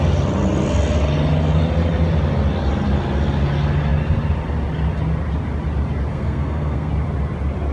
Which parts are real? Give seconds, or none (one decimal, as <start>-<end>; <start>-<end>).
0.0-6.1; 6.9-7.7